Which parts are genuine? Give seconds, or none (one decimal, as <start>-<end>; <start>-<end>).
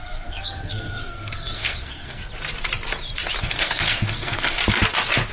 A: 2.2-3.4; 4.6-5.3